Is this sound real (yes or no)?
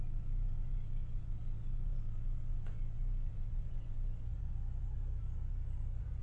no